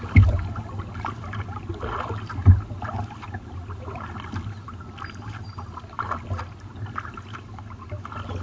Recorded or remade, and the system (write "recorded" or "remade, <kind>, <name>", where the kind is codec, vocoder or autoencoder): recorded